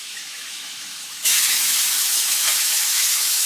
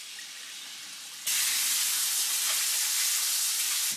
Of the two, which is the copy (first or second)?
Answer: first